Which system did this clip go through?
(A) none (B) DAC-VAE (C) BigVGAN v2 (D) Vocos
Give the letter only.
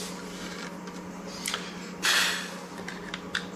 A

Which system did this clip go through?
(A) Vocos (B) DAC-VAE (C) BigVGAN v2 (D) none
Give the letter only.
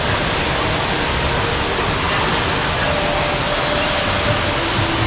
D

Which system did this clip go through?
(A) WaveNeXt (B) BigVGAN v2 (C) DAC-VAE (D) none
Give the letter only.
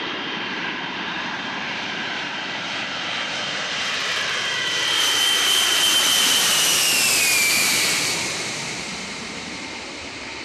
B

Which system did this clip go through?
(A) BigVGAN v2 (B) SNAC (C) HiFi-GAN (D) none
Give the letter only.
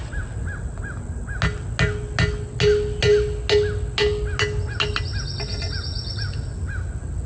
D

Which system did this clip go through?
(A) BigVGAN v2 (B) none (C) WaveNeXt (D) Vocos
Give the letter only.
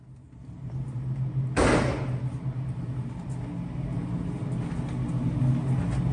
B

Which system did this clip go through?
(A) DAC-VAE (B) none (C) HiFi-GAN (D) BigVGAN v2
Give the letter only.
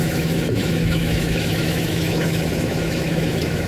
A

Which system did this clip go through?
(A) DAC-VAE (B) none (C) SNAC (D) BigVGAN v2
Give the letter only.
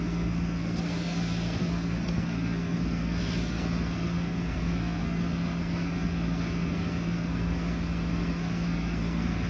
C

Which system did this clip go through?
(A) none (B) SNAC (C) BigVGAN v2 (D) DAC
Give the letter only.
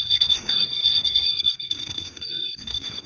B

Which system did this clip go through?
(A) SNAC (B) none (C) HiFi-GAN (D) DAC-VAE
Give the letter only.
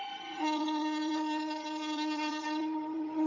C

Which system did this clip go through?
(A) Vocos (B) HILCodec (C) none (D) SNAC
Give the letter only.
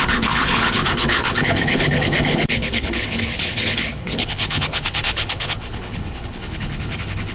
B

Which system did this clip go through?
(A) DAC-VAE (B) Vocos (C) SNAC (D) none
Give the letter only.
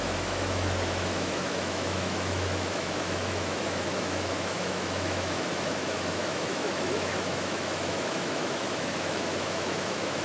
A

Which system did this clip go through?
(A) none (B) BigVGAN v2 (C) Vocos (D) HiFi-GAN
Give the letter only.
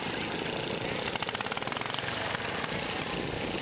A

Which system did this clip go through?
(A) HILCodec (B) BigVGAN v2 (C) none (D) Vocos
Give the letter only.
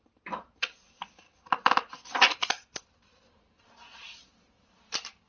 C